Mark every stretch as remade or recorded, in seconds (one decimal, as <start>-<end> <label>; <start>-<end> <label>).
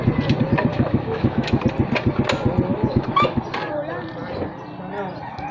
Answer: 0.0-0.7 recorded; 0.7-1.6 remade; 1.6-2.7 recorded; 2.7-3.4 remade; 3.4-5.5 recorded